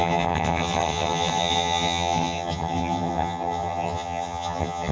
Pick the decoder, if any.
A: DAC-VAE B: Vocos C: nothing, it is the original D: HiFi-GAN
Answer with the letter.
D